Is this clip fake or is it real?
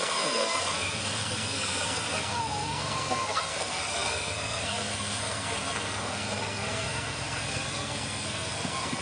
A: fake